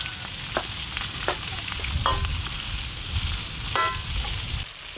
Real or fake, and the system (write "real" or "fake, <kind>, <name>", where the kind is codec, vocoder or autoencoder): real